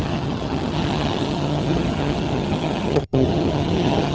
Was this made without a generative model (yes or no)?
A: no